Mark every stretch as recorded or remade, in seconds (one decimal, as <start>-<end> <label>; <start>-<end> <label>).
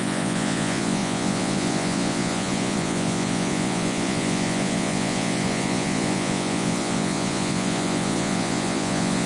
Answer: 0.0-9.3 remade